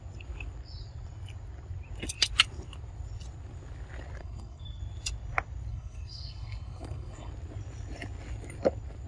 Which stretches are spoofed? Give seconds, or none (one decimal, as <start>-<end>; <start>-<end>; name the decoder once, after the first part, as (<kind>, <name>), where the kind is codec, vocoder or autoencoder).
4.2-4.8 (codec, SNAC); 5.7-7.3